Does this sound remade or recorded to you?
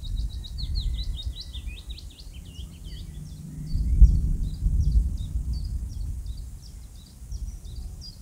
recorded